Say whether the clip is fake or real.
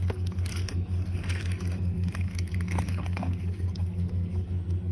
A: fake